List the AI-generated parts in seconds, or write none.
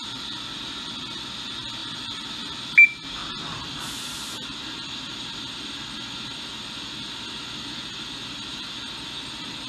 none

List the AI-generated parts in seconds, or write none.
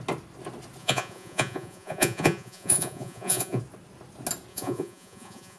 0.8-3.6 (vocoder, Vocos); 4.5-5.6